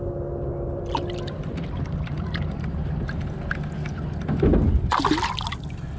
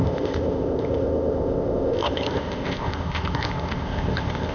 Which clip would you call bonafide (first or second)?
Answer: first